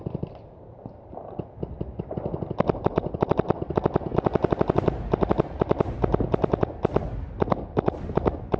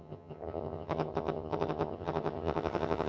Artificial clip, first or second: second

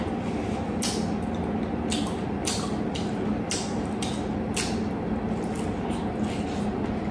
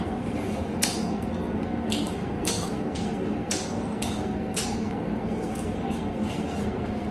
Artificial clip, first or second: second